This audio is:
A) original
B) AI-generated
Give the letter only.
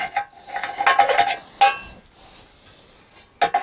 A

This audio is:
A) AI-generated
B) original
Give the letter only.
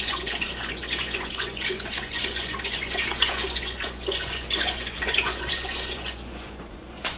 A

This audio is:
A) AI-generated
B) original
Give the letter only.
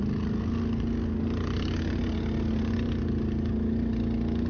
B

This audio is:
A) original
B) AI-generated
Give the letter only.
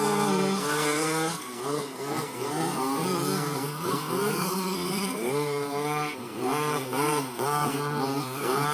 B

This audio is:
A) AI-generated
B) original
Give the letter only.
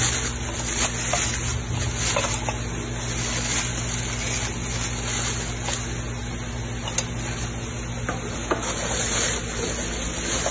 B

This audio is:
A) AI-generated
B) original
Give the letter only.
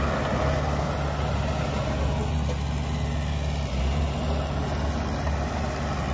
B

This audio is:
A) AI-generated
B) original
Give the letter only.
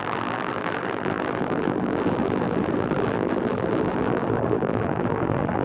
A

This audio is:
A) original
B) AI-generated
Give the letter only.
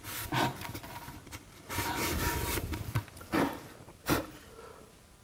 A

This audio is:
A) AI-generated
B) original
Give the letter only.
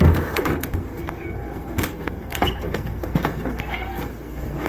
A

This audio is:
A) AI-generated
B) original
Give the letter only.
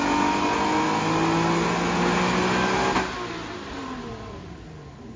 B